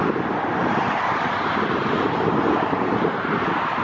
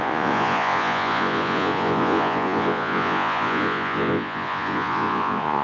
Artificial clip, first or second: second